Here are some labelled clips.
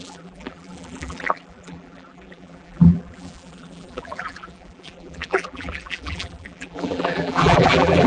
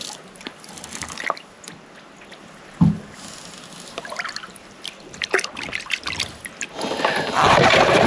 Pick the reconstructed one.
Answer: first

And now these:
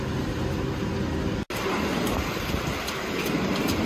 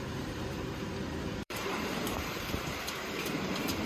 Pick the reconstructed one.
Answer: second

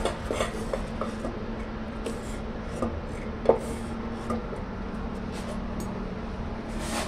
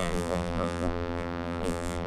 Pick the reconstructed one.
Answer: second